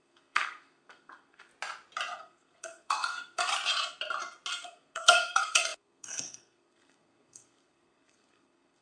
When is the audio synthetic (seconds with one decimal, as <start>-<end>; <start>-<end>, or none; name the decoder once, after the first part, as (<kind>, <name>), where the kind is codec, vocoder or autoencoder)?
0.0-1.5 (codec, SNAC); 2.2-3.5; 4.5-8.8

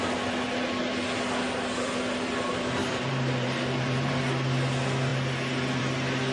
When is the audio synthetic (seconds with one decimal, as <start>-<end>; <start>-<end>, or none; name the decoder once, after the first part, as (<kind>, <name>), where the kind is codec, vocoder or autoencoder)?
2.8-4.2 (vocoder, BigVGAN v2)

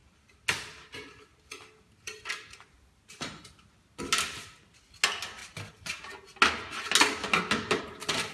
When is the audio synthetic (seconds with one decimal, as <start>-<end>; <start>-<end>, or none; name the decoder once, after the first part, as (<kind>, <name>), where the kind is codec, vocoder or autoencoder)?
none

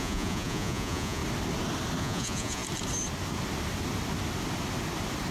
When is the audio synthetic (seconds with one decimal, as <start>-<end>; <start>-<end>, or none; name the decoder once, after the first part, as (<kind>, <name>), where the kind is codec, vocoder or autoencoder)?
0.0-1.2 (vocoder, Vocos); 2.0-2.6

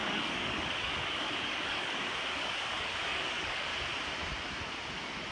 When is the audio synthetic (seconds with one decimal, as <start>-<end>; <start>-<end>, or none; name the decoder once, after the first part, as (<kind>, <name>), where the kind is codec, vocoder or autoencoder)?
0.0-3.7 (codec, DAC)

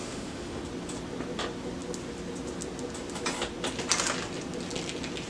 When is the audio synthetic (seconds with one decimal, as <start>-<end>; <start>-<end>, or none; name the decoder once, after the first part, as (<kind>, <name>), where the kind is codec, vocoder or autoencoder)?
0.0-0.6 (autoencoder, DAC-VAE)